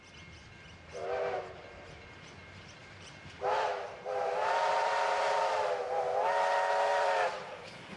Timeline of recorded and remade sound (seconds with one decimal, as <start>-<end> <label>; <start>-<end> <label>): 0.0-2.8 recorded; 2.8-5.6 remade; 5.6-6.9 recorded; 6.9-8.0 remade